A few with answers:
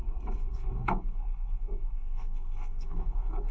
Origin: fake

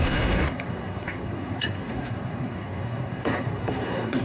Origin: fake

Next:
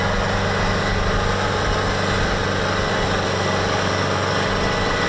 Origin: real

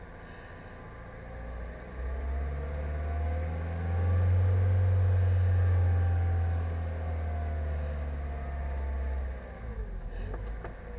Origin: real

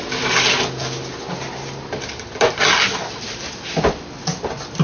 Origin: real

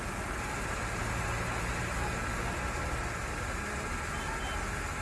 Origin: real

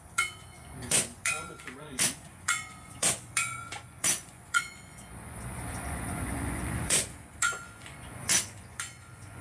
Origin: fake